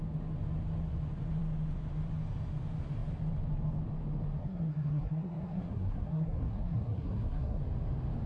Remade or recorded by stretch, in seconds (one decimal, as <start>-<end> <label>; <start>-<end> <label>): 0.0-4.4 recorded; 4.4-7.6 remade; 7.6-8.3 recorded